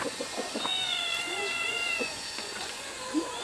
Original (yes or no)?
no